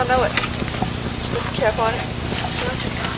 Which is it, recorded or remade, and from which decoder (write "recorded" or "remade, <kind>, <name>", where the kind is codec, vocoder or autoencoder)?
recorded